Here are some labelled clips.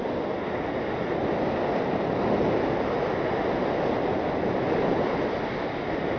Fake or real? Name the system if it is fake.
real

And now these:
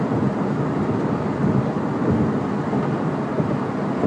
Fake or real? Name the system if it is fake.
real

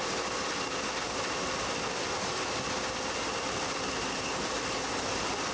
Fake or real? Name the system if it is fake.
real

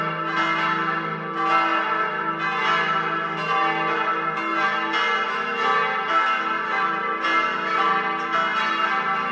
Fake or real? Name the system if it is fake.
real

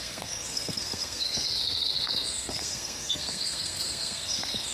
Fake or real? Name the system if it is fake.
fake, codec, SNAC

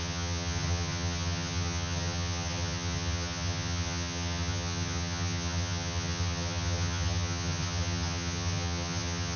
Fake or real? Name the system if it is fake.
fake, vocoder, HiFi-GAN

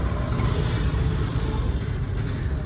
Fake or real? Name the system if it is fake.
real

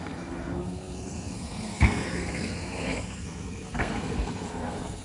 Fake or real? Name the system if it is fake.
fake, codec, SNAC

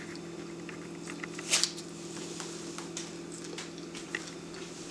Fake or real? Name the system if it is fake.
real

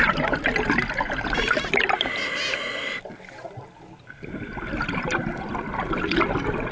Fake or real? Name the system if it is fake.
real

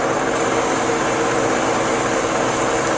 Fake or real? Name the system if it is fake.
real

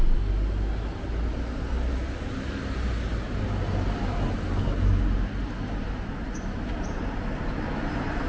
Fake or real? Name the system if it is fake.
real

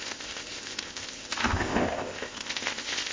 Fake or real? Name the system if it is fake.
fake, codec, ZipCodec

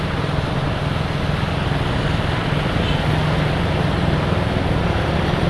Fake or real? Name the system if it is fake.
real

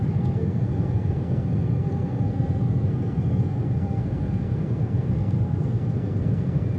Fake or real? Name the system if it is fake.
fake, codec, SNAC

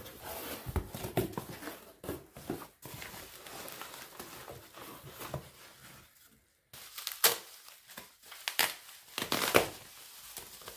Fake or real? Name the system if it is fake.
real